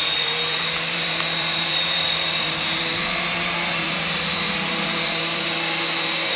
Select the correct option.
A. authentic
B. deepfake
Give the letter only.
B